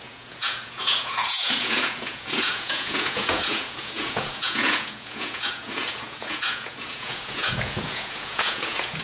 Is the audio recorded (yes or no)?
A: no